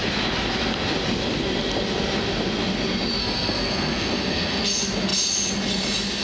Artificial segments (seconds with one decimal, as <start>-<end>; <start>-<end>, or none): 3.2-4.6